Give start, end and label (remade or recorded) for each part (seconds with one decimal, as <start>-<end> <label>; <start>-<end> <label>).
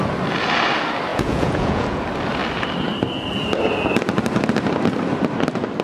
0.0-1.1 recorded; 1.1-2.0 remade; 2.0-5.8 recorded